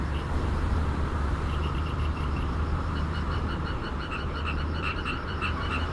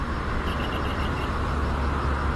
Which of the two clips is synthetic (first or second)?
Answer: first